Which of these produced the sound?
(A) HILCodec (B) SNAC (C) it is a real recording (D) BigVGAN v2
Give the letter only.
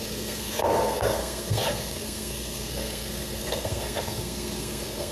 B